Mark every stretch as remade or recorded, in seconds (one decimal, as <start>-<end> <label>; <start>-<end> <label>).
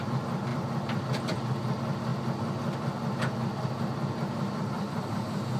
0.0-2.1 remade; 2.1-5.6 recorded